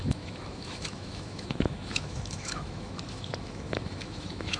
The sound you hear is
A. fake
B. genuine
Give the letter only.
A